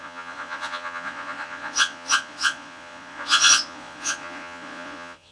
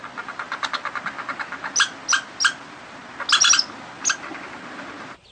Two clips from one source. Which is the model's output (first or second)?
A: first